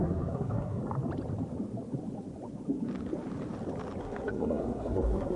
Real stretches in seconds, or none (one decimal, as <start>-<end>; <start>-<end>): 0.8-4.0